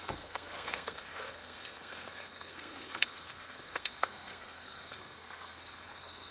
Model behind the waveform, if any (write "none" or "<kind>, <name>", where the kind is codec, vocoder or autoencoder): codec, SNAC